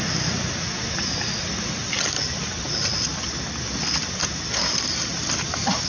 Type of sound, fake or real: real